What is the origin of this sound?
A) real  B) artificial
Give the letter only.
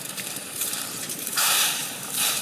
B